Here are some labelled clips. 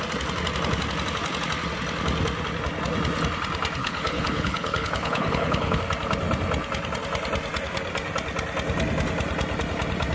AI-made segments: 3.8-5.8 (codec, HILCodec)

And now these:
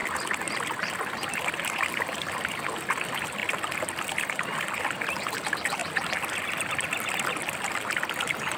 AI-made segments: 1.3-5.8 (vocoder, BigVGAN v2); 7.4-8.6

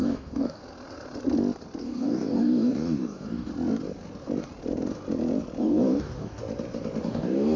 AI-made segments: 0.0-0.6 (codec, DAC); 1.8-3.5; 5.6-6.4; 7.0-7.6

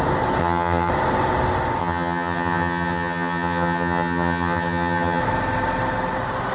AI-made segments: 0.4-0.9 (vocoder, HiFi-GAN); 1.8-5.2

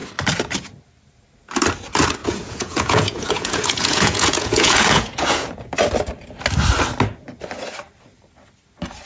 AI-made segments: 2.2-5.7 (vocoder, Vocos)

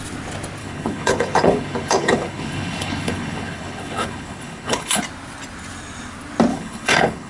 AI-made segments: 0.6-5.0 (codec, HILCodec); 6.5-7.3

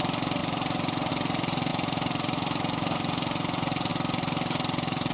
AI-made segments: none

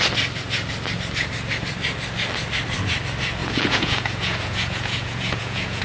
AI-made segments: 3.4-5.8 (vocoder, Vocos)